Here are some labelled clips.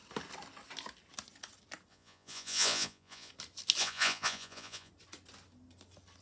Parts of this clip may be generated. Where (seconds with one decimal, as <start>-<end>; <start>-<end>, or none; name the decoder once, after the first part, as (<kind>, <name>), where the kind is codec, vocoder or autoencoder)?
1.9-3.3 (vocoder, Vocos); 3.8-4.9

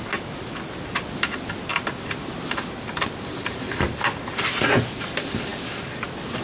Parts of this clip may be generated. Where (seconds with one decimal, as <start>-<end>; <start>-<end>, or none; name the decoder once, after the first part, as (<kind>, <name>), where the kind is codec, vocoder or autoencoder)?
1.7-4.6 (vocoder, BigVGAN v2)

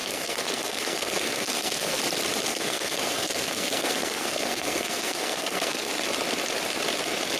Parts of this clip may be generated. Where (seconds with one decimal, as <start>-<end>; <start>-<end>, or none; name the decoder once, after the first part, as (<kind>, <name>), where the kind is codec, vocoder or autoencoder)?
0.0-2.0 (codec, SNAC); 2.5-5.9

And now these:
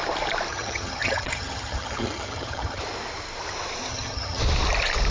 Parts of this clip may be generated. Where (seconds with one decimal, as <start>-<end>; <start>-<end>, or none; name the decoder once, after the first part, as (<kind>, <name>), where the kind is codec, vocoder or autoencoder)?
0.5-2.8 (vocoder, HiFi-GAN); 3.9-4.4

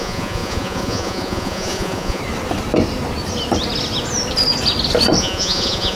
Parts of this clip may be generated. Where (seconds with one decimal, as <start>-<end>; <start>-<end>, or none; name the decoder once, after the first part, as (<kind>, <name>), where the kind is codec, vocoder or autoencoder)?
0.0-2.2 (vocoder, Vocos); 5.2-6.0

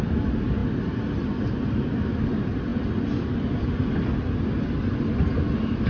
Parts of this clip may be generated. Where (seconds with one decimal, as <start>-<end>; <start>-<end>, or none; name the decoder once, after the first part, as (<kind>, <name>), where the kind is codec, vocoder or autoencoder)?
none

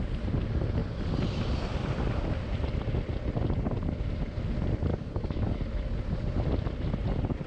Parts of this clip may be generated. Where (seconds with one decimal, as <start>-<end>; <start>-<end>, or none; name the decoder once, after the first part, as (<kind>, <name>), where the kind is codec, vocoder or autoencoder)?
4.9-5.6 (codec, DAC)

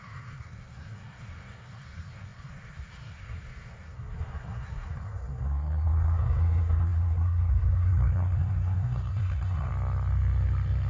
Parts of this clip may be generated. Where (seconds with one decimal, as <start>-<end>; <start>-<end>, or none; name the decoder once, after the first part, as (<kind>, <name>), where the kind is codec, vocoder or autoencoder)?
0.0-9.7 (codec, SNAC)